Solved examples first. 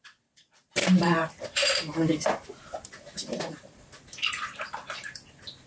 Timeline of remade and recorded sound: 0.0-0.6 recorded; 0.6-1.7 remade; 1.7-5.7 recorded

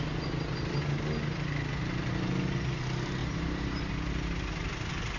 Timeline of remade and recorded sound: 0.0-3.2 recorded; 3.2-3.8 remade; 3.8-5.2 recorded

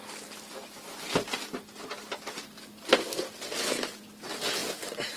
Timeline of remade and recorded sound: 0.0-5.2 recorded

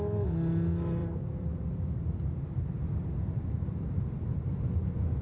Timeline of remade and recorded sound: 0.0-1.0 recorded; 1.0-4.1 remade; 4.1-5.2 recorded